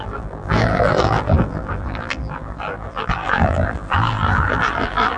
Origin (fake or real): fake